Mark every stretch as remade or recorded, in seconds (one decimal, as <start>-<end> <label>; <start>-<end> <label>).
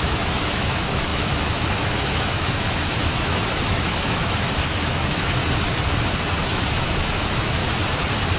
0.0-5.4 remade; 5.4-6.4 recorded; 6.4-7.6 remade; 7.6-8.4 recorded